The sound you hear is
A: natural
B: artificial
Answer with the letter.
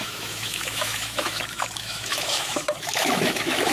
B